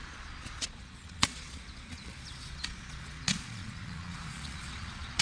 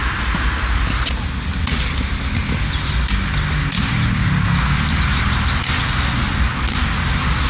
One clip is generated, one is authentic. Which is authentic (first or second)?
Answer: second